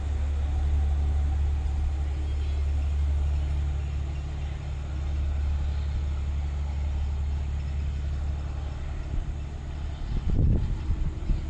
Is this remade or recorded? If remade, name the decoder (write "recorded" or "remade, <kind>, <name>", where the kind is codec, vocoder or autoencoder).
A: recorded